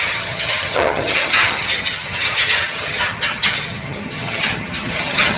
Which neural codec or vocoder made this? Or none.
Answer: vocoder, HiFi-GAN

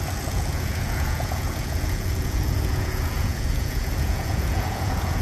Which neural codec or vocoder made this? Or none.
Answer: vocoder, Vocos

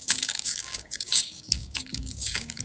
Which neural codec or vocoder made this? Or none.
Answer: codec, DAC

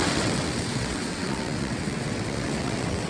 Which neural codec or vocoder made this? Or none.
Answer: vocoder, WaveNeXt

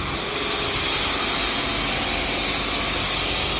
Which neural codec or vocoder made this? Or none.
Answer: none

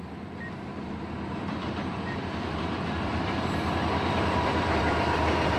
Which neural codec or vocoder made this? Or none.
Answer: vocoder, BigVGAN v2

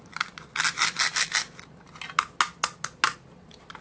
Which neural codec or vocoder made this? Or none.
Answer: none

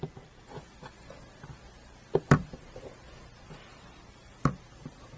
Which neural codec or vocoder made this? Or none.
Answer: none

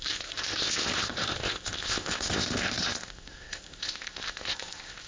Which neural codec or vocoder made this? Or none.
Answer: codec, ZipCodec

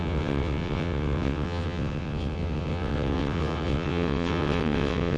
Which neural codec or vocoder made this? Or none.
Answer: vocoder, WaveNeXt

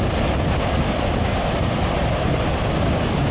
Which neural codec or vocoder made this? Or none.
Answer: none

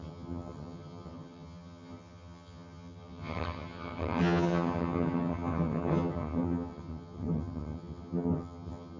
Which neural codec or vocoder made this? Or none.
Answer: vocoder, HiFi-GAN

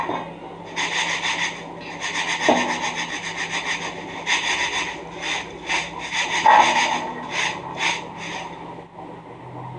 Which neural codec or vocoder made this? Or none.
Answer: none